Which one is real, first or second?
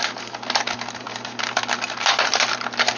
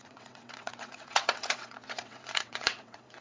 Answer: first